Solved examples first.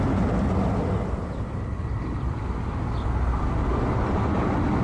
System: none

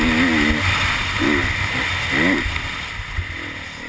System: none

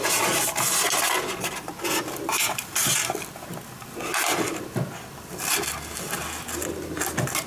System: none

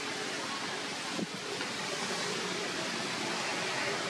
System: none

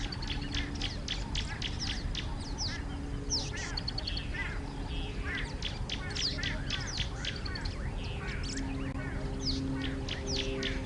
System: none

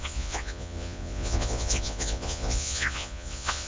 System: vocoder, Vocos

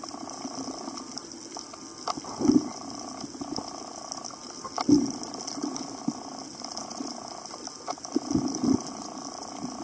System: none